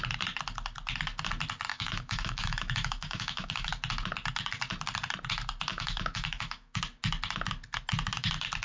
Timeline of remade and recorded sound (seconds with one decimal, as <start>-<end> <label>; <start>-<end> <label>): 0.0-1.7 recorded; 1.7-3.7 remade; 3.7-5.7 recorded; 5.7-6.8 remade; 6.8-8.6 recorded